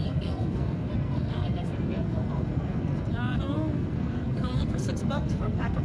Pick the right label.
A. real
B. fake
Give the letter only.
B